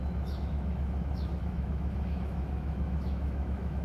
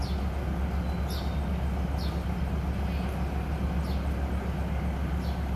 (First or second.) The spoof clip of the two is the first